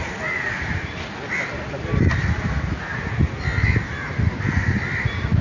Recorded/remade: recorded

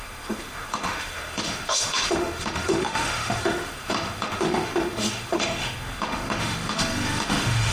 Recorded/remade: remade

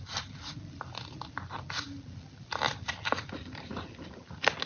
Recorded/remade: recorded